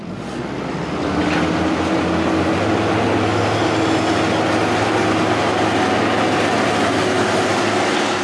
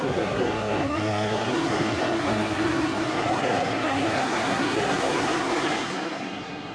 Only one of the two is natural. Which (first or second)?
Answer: first